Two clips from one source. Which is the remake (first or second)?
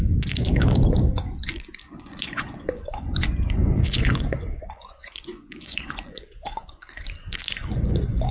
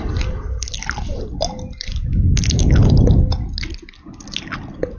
first